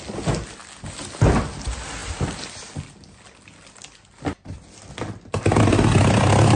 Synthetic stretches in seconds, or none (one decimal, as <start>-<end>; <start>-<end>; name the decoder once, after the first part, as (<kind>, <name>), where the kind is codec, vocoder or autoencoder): none